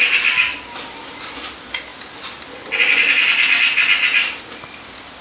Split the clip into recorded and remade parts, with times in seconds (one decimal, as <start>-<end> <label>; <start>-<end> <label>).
0.0-5.2 recorded